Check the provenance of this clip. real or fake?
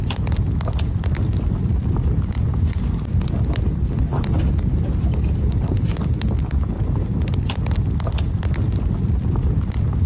real